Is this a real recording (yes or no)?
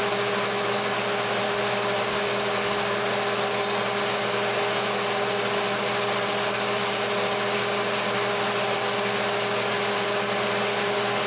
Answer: yes